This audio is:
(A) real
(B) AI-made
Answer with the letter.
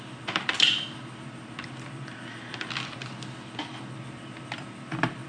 B